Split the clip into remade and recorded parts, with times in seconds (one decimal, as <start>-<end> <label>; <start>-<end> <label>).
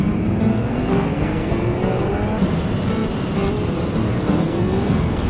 0.0-0.5 recorded; 0.5-2.1 remade; 2.1-4.1 recorded; 4.1-5.3 remade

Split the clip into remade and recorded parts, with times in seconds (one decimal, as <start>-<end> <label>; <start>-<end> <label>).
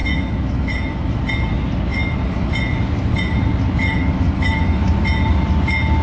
0.0-1.2 remade; 1.2-1.9 recorded; 1.9-2.5 remade; 2.5-3.8 recorded; 3.8-4.8 remade; 4.8-6.0 recorded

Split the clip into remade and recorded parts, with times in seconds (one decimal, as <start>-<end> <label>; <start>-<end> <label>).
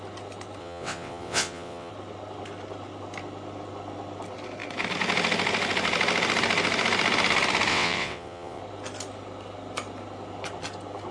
0.0-0.6 recorded; 0.6-1.9 remade; 1.9-7.7 recorded; 7.7-8.6 remade; 8.6-11.1 recorded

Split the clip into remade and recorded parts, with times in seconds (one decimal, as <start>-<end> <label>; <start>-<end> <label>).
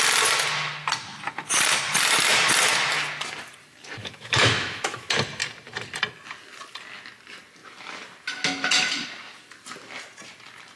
0.0-4.0 recorded; 4.0-5.1 remade; 5.1-10.8 recorded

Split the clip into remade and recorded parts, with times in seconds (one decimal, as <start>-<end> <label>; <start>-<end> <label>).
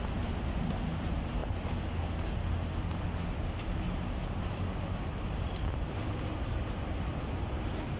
0.0-8.0 recorded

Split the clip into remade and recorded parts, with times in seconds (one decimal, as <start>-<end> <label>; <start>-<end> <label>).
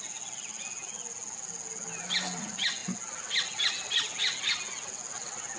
0.0-5.6 recorded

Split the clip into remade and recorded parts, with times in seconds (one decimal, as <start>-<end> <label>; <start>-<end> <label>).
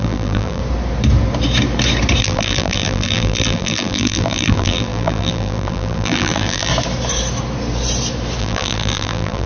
0.0-0.6 remade; 0.6-2.2 recorded; 2.2-6.7 remade; 6.7-8.4 recorded; 8.4-9.5 remade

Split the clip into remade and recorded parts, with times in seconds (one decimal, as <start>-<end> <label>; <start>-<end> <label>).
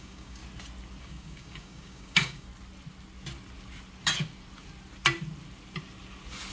0.0-0.4 remade; 0.4-1.0 recorded; 1.0-2.5 remade; 2.5-6.5 recorded